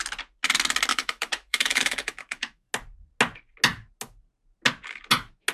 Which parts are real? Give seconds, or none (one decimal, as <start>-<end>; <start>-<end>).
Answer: 0.0-0.9; 2.7-5.5